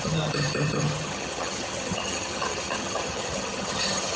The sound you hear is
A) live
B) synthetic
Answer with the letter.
B